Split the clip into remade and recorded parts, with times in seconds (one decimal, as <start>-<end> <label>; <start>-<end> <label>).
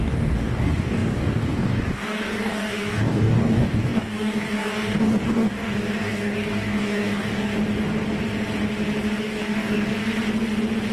0.0-7.5 remade; 7.5-9.2 recorded; 9.2-9.9 remade; 9.9-10.9 recorded